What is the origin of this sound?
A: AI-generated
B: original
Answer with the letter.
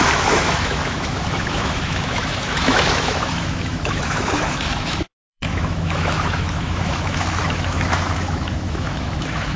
A